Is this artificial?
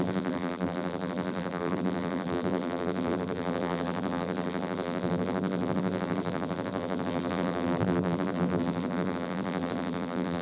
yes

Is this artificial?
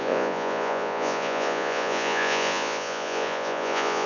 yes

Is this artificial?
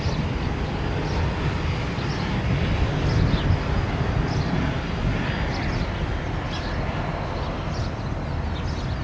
no